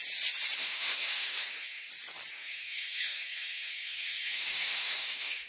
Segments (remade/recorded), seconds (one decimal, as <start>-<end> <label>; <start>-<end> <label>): 0.0-0.6 recorded; 0.6-1.9 remade; 1.9-2.3 recorded; 2.3-5.5 remade